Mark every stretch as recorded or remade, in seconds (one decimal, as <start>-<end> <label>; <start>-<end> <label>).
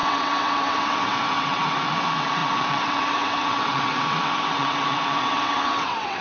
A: 0.0-6.2 remade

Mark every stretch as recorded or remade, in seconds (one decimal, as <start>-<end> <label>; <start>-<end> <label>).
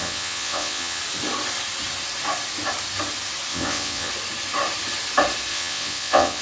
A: 0.0-1.0 remade; 1.0-3.5 recorded; 3.5-4.1 remade; 4.1-5.5 recorded; 5.5-6.4 remade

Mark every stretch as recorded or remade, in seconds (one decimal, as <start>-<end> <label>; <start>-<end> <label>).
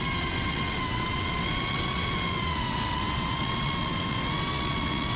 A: 0.0-5.2 remade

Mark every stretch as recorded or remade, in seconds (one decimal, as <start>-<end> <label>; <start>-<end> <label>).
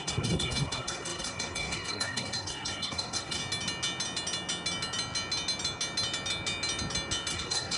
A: 0.0-3.4 remade; 3.4-7.3 recorded; 7.3-7.8 remade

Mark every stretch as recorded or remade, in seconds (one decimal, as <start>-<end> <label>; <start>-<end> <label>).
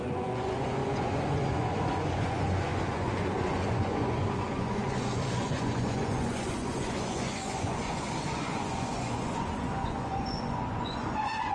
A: 0.0-11.5 remade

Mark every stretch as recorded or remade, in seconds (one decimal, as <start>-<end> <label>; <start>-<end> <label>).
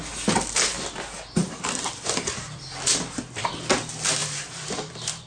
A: 0.0-0.7 recorded; 0.7-3.7 remade; 3.7-4.2 recorded; 4.2-5.3 remade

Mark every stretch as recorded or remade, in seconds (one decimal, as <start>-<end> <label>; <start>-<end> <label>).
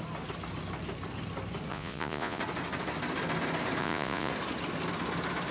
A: 0.0-1.7 recorded; 1.7-2.4 remade; 2.4-3.8 recorded; 3.8-4.3 remade; 4.3-5.5 recorded